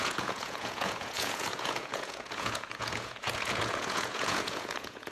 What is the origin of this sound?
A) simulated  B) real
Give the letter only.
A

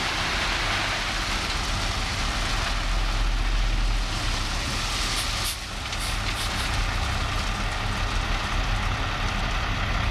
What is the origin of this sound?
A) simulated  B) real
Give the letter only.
B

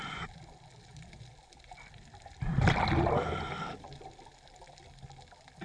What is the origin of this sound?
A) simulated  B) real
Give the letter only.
B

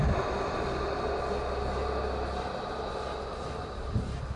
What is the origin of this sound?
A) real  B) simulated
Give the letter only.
A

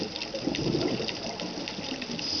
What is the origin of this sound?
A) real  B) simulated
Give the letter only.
A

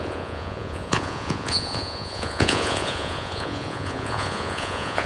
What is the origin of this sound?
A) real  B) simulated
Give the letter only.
B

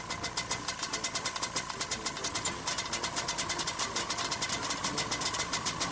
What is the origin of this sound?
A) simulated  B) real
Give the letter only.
B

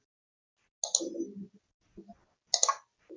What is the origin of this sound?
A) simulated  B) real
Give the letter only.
B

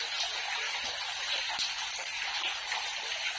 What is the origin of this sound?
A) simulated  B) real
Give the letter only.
B